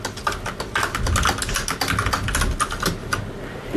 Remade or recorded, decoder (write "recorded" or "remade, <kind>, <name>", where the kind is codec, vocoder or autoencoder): recorded